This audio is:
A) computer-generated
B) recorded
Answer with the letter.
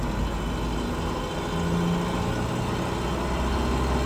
B